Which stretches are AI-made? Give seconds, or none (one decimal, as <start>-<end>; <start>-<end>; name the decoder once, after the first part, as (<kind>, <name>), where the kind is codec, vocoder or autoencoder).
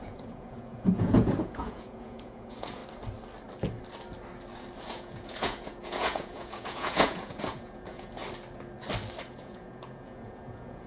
0.0-2.8 (vocoder, Vocos); 4.8-8.2; 9.3-10.9